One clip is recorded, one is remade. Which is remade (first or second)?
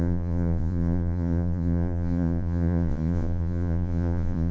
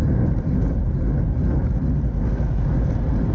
first